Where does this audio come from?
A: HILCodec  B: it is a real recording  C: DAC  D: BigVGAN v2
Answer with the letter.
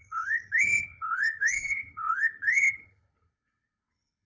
A